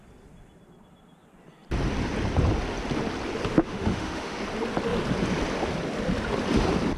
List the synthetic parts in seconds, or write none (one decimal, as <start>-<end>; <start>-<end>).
3.6-4.4